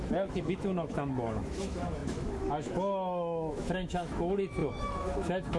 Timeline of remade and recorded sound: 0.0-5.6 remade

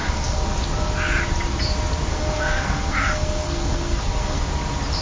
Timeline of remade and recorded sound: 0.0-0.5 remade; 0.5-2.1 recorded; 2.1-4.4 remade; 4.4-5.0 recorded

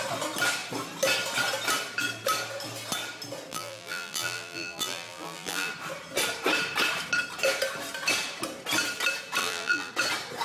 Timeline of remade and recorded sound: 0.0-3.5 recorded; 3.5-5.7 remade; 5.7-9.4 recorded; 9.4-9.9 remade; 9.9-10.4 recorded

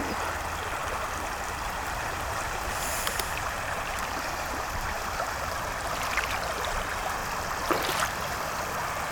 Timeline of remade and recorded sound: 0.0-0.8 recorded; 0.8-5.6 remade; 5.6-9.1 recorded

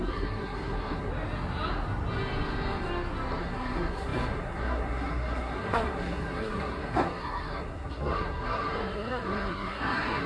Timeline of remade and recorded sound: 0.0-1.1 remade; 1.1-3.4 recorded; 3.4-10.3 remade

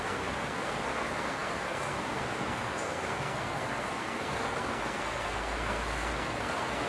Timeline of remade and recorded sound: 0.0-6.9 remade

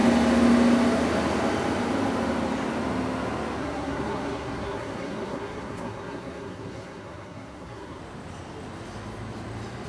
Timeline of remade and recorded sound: 0.0-3.6 recorded; 3.6-8.0 remade; 8.0-9.9 recorded

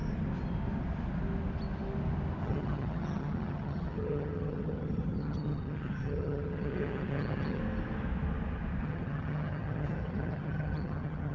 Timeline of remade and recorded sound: 0.0-2.4 recorded; 2.4-7.6 remade; 7.6-8.8 recorded; 8.8-11.3 remade